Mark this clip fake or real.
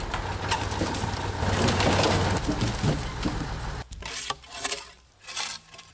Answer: real